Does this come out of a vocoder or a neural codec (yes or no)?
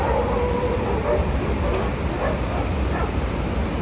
no